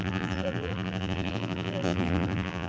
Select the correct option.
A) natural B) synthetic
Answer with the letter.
B